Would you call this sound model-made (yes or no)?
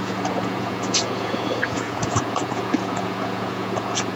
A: yes